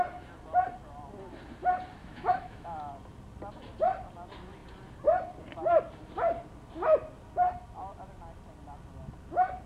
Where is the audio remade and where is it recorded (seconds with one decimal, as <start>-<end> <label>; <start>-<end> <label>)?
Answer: 0.0-2.0 recorded; 2.0-2.9 remade; 2.9-9.7 recorded